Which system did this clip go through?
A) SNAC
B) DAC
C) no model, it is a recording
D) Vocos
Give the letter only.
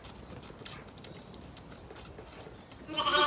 C